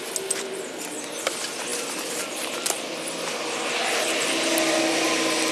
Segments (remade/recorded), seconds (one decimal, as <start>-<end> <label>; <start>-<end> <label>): 0.0-5.5 recorded